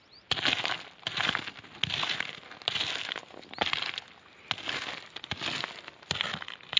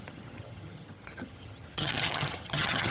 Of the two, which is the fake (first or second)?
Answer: second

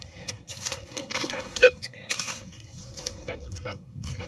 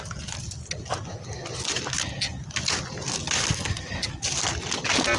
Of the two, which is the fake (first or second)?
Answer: first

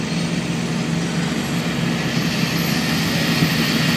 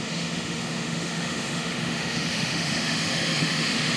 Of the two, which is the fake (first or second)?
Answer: second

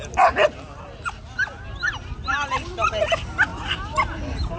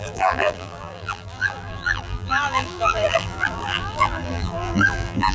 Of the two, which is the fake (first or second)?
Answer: second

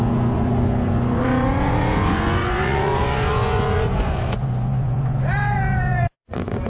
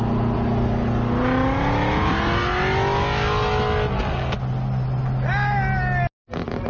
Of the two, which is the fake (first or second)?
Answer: first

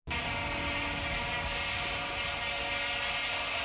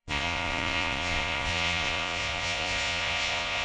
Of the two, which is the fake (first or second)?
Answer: second